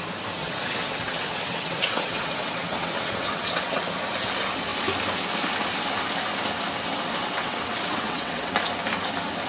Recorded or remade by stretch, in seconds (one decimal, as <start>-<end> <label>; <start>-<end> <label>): 0.0-0.4 recorded; 0.4-3.8 remade; 3.8-7.2 recorded; 7.2-8.5 remade; 8.5-9.5 recorded